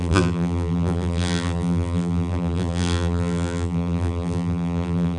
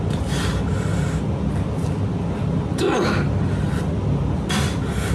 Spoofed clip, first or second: first